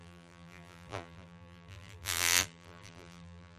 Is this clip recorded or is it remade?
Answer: remade